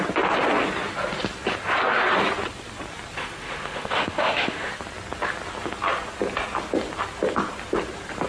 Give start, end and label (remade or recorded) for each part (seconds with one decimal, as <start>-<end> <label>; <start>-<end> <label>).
0.0-3.2 recorded; 3.2-4.7 remade; 4.7-8.3 recorded